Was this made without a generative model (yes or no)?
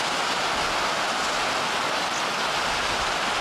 yes